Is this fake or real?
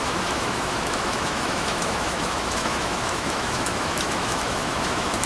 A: fake